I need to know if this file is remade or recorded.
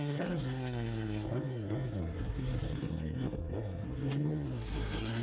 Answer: remade